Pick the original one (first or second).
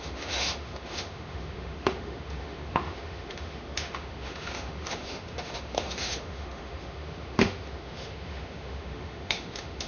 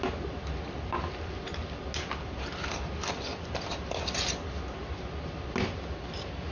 second